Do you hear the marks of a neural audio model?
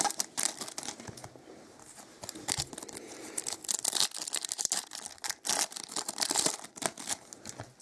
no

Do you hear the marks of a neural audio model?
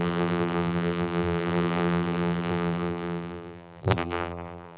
yes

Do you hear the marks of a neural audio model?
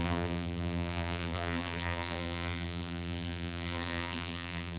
yes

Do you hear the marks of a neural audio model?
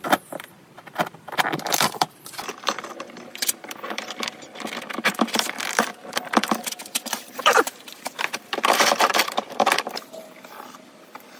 yes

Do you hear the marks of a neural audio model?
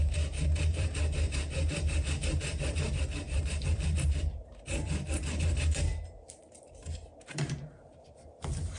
yes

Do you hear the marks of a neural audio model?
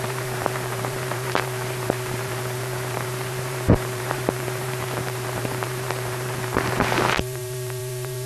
yes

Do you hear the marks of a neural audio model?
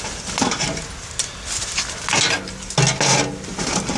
no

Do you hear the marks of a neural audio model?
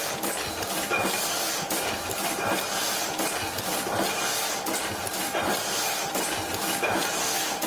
yes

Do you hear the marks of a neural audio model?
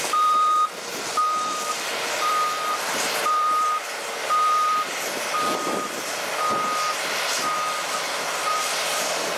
yes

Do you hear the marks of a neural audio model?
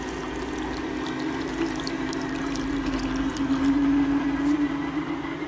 no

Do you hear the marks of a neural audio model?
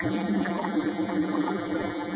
yes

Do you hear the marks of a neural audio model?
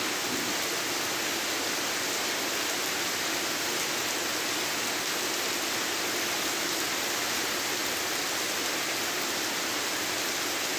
no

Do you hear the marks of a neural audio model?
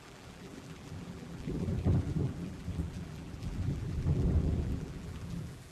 yes